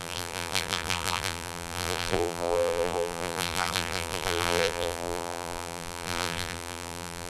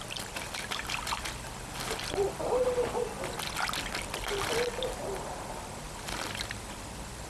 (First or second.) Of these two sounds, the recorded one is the second